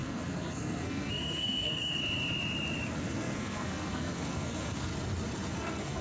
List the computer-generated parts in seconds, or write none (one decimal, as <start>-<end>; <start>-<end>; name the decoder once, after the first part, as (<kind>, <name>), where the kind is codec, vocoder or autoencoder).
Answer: 0.0-2.0 (codec, SNAC); 3.0-4.9; 5.5-6.0